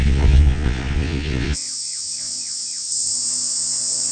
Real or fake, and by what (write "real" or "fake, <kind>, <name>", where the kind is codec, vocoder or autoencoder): fake, vocoder, Vocos